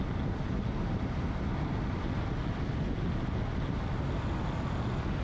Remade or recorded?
recorded